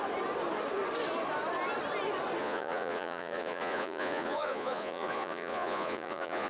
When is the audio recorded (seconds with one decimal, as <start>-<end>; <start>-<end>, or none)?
0.0-2.4